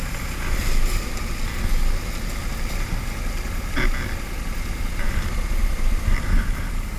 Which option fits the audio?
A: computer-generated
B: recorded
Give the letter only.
B